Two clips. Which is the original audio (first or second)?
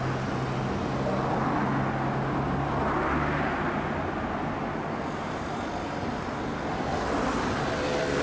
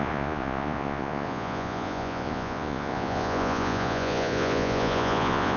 first